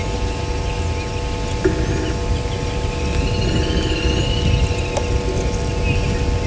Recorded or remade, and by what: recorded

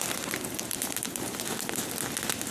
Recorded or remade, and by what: recorded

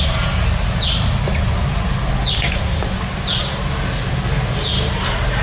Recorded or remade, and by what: recorded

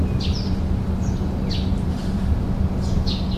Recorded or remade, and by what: recorded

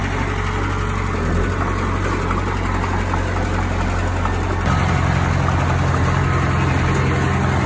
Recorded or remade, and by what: recorded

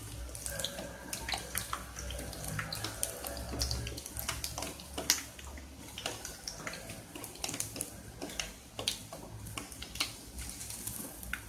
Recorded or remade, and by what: recorded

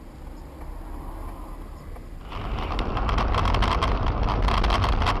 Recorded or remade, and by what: recorded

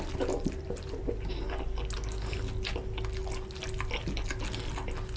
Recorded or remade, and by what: recorded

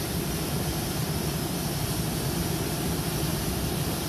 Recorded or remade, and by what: remade, vocoder, BigVGAN v2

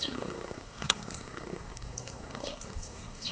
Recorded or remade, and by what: remade, codec, SNAC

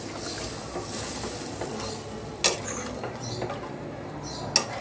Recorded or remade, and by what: recorded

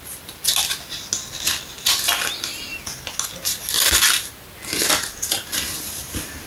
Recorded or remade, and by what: recorded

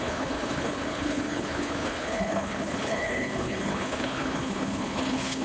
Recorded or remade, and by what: remade, codec, HILCodec